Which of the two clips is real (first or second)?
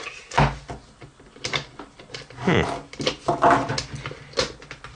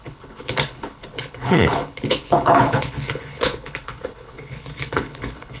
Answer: first